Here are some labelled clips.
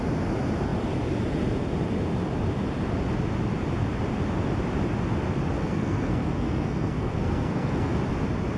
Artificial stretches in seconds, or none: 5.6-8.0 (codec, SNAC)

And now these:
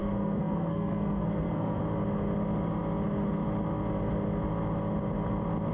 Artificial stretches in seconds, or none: 0.0-1.8 (codec, SNAC)

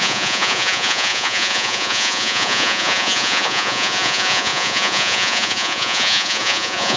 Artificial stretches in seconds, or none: 0.0-7.0 (vocoder, Vocos)

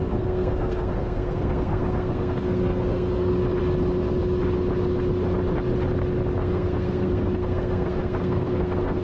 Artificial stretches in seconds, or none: 0.0-3.3 (codec, SNAC); 6.4-9.0

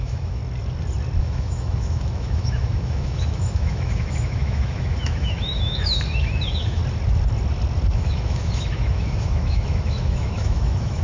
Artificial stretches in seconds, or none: 0.0-0.4 (autoencoder, DAC-VAE); 1.2-6.8; 7.9-11.0